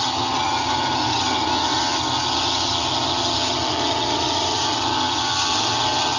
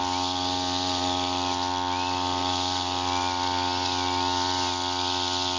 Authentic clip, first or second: second